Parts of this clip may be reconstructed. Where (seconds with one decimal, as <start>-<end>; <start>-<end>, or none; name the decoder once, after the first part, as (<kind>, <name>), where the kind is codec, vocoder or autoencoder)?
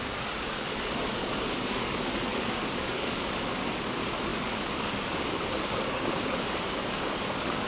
0.0-7.7 (codec, DAC)